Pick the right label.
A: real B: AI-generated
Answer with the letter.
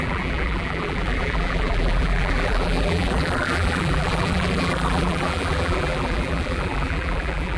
B